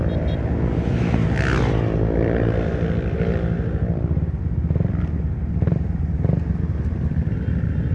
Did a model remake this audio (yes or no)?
no